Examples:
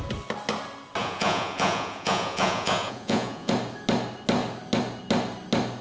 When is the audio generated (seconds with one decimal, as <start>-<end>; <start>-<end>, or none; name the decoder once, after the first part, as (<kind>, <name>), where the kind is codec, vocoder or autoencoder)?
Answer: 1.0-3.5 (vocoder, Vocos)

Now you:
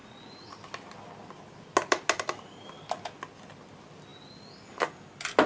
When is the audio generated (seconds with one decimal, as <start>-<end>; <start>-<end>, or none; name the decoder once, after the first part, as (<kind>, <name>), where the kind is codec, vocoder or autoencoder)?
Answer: 0.0-0.5 (vocoder, Vocos)

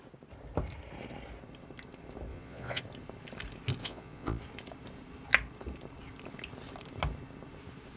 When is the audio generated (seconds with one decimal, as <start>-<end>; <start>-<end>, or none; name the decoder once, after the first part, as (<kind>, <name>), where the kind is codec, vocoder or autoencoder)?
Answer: 2.3-2.8 (vocoder, Vocos); 3.8-4.4

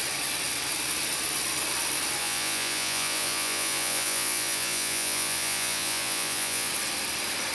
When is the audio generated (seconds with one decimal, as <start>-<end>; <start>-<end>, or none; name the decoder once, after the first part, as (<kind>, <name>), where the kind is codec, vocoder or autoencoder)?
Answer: 2.2-6.7 (vocoder, Vocos)